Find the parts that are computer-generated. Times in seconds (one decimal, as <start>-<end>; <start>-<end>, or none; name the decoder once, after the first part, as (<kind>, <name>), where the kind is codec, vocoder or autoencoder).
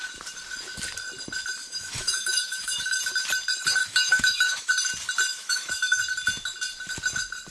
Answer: 1.6-3.0 (autoencoder, DAC-VAE); 3.8-4.7; 5.3-6.0